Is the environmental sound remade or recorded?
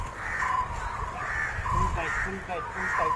recorded